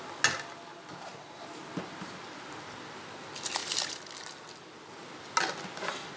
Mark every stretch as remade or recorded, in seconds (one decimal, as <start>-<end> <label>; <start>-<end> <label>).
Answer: 0.0-6.2 recorded